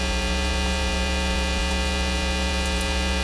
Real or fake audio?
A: fake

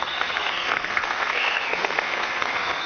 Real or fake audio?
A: fake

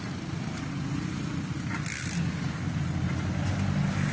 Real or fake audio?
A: real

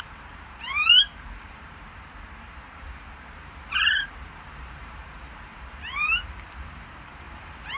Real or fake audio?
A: fake